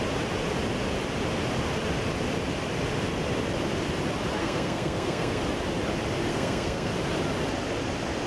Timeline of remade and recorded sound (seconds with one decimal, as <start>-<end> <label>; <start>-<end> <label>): 0.0-4.4 recorded; 4.4-5.4 remade; 5.4-6.3 recorded; 6.3-6.9 remade; 6.9-8.3 recorded